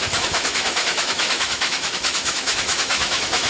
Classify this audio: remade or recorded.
remade